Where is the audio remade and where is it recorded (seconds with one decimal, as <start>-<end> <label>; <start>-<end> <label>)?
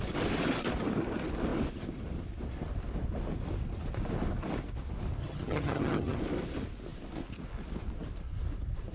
0.0-5.2 recorded; 5.2-6.2 remade; 6.2-8.9 recorded